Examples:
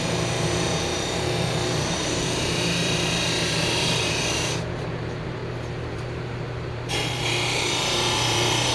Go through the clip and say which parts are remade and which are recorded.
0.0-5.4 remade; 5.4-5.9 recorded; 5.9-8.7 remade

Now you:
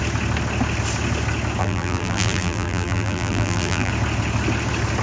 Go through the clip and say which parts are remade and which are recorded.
0.0-1.6 recorded; 1.6-3.9 remade; 3.9-5.0 recorded

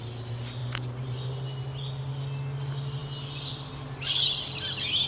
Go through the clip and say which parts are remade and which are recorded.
0.0-0.6 recorded; 0.6-1.9 remade; 1.9-5.1 recorded

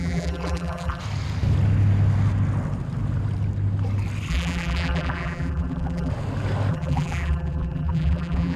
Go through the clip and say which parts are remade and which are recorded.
0.0-1.0 remade; 1.0-4.3 recorded; 4.3-6.1 remade; 6.1-6.7 recorded; 6.7-8.6 remade